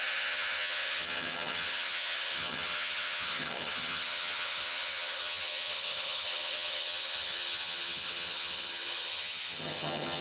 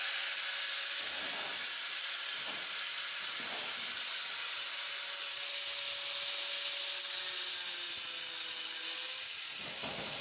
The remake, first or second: first